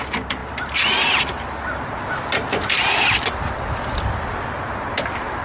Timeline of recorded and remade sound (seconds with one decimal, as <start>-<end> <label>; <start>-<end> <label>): 0.0-5.4 recorded